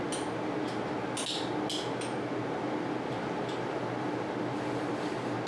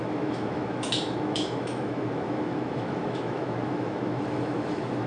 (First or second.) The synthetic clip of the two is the second